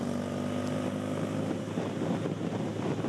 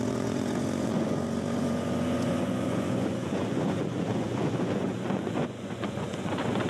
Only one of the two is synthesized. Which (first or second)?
second